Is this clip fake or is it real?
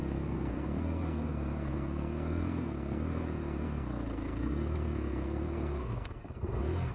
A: fake